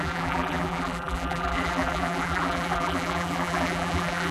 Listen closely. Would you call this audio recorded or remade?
remade